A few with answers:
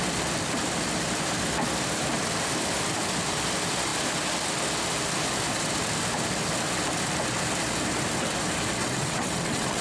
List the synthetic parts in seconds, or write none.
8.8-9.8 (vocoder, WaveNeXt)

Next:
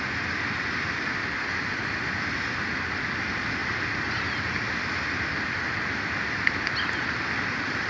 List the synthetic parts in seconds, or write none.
none

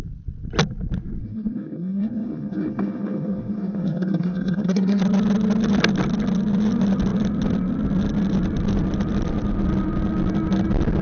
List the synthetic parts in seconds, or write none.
1.2-5.0 (codec, SNAC)

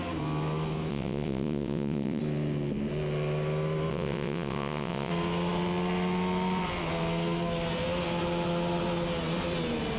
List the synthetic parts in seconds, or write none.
0.9-2.2 (vocoder, WaveNeXt); 3.9-5.1